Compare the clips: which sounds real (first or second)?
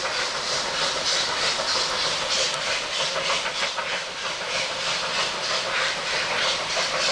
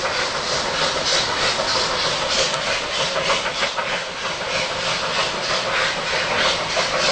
second